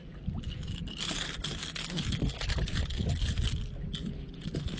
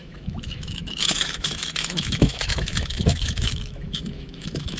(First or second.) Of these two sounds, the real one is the first